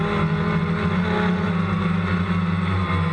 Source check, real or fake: real